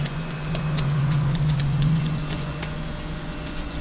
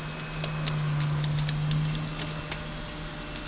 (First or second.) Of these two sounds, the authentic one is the second